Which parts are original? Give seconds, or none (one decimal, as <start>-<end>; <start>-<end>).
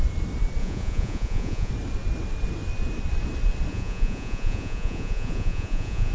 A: 0.0-0.6; 1.7-3.7